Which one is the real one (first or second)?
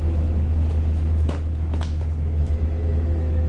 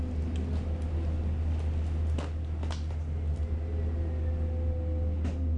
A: second